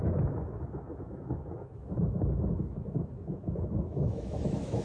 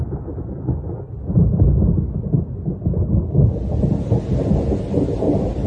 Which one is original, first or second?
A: second